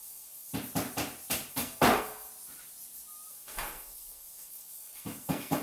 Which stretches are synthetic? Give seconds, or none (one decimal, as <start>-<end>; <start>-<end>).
0.0-0.5; 1.5-2.3; 3.3-5.6